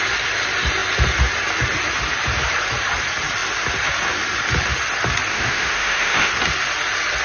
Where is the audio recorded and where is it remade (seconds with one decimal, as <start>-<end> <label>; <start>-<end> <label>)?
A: 0.0-5.3 recorded; 5.3-6.3 remade; 6.3-7.2 recorded